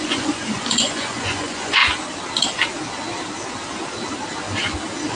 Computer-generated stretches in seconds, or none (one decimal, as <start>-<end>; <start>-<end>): 0.0-1.8